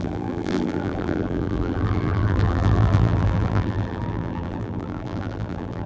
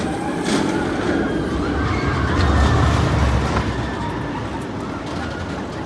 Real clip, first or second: second